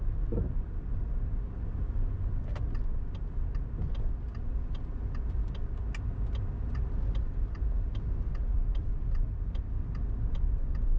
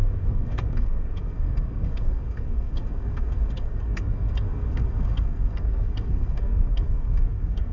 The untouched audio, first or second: first